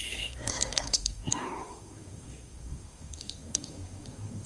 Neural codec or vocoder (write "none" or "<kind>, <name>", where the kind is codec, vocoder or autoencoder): codec, SNAC